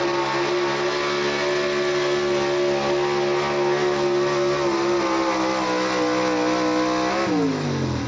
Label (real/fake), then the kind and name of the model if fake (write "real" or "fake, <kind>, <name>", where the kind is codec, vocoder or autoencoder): real